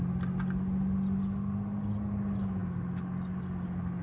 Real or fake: real